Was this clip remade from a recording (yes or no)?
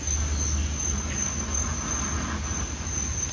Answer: no